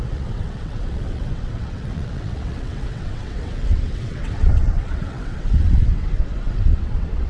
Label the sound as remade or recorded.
remade